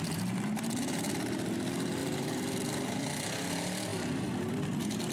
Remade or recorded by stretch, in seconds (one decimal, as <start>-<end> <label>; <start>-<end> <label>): 0.0-5.1 remade